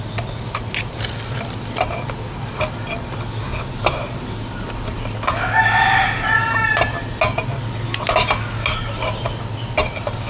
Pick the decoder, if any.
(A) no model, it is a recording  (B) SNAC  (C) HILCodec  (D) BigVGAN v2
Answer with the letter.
A